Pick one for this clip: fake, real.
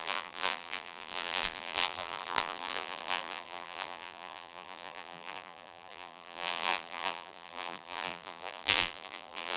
fake